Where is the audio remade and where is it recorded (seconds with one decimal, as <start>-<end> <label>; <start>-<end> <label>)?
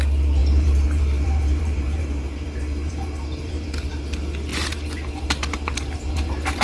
0.0-0.4 recorded; 0.4-4.0 remade; 4.0-4.5 recorded; 4.5-6.6 remade